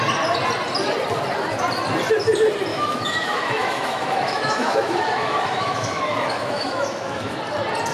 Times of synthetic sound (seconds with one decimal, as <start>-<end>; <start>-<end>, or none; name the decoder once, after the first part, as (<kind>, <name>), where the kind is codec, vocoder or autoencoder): 2.7-7.4 (autoencoder, DAC-VAE)